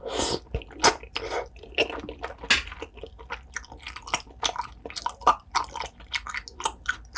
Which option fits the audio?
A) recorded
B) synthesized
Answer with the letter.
A